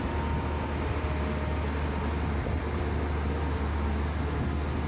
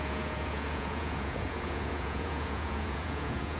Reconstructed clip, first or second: second